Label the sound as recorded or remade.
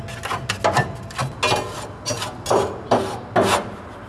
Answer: recorded